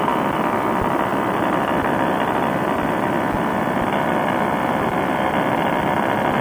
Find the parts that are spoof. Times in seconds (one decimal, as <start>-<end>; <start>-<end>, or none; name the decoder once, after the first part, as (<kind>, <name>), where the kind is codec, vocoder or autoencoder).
none